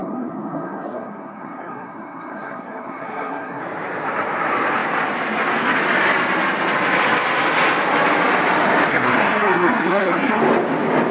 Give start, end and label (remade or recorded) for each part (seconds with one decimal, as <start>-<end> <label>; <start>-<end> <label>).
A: 0.0-3.6 remade; 3.6-8.9 recorded; 8.9-10.4 remade; 10.4-11.1 recorded